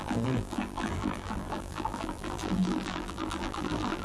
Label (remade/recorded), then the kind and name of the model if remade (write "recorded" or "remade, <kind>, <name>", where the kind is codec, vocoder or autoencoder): remade, vocoder, BigVGAN v2